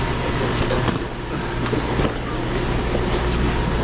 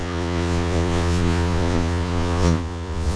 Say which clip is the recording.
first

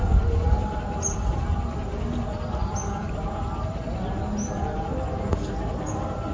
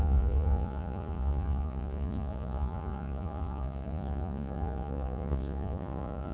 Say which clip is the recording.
first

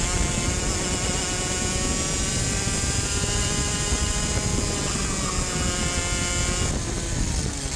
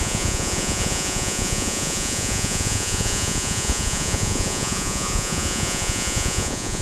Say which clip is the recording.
first